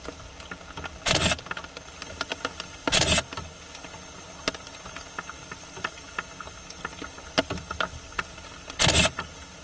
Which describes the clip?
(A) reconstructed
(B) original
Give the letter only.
B